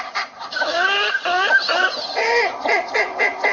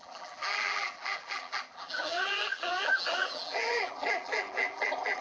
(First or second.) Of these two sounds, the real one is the first